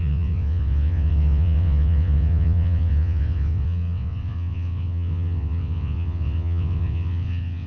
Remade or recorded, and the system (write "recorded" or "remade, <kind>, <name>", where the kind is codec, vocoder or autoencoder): remade, vocoder, WaveNeXt